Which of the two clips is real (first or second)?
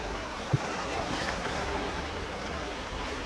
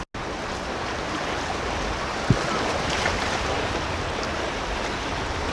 second